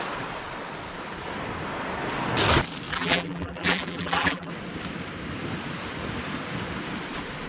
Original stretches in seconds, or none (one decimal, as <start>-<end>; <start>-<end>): 0.0-2.9; 4.5-7.5